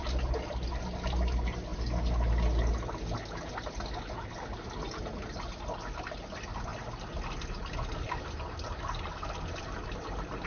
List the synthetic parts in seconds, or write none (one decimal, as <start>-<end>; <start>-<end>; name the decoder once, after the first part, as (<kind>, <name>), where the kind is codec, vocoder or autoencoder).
none